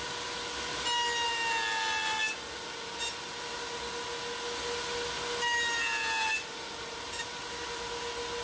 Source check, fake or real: real